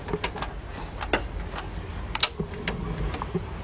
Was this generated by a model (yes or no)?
no